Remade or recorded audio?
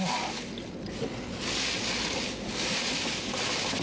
recorded